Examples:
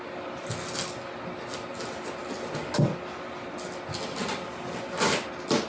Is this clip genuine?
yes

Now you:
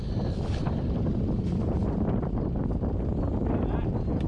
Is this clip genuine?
yes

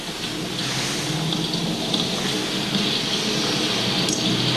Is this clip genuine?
yes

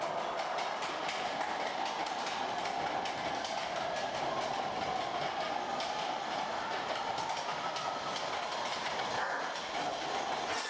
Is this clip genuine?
yes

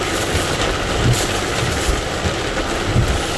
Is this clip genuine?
yes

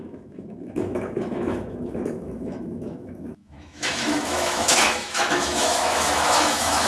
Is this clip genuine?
no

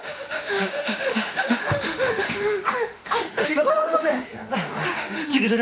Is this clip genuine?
no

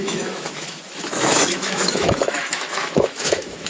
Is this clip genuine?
no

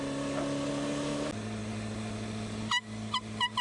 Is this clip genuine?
yes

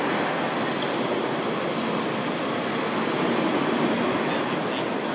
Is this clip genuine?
yes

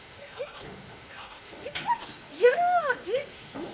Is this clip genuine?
no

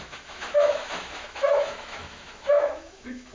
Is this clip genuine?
no